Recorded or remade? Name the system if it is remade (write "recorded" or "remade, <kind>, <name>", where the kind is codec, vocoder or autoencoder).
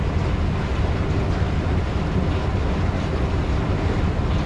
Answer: recorded